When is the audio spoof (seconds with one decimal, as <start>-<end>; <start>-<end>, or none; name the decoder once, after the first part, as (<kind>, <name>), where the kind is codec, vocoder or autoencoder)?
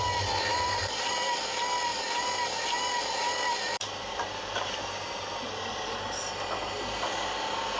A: 0.5-1.1 (vocoder, BigVGAN v2); 1.9-4.8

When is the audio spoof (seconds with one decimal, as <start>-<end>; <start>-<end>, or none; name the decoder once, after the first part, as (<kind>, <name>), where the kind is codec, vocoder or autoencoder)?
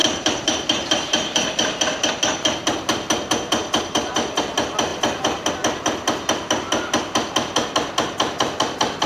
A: 0.0-2.1 (vocoder, BigVGAN v2); 3.6-4.4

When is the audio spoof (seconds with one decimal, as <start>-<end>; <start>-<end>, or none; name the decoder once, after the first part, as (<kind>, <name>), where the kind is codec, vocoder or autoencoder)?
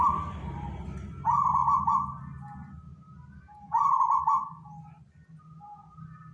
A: 0.0-1.6 (vocoder, BigVGAN v2); 5.4-6.3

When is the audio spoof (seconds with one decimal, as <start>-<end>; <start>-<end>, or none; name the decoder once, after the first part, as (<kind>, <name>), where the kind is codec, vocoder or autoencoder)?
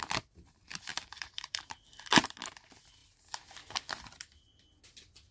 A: 0.9-1.9 (vocoder, BigVGAN v2)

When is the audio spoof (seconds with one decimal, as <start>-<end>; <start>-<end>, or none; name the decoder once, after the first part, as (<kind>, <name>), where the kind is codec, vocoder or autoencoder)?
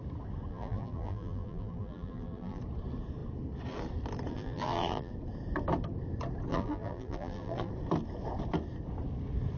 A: 0.5-2.6 (vocoder, BigVGAN v2); 4.3-5.1; 6.5-7.7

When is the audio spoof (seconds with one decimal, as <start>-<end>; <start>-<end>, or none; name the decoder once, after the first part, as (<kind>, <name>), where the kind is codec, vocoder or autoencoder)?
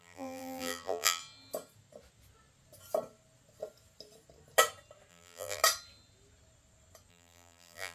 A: 0.0-1.2 (vocoder, BigVGAN v2); 5.1-5.6; 7.1-7.9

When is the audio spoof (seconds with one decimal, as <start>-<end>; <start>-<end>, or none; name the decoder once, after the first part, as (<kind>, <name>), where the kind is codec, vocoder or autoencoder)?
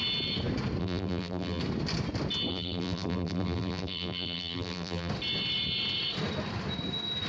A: 0.8-1.6 (vocoder, BigVGAN v2); 2.5-5.1